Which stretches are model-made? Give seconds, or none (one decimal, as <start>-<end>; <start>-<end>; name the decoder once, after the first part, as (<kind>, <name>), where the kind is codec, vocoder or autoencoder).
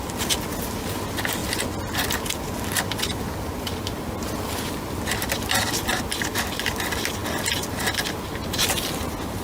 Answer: none